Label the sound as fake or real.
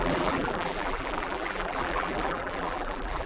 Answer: fake